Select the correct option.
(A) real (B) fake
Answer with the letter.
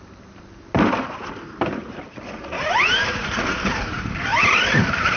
B